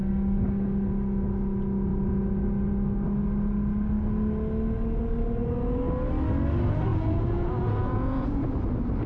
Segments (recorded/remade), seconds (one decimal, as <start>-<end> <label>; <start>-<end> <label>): 0.0-6.9 recorded; 6.9-8.4 remade; 8.4-9.1 recorded